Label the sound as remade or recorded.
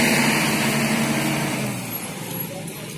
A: recorded